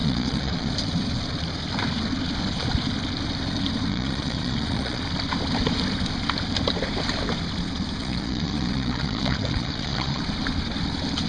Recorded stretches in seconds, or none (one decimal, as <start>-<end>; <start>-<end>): 0.7-3.9; 5.0-8.0; 10.2-11.3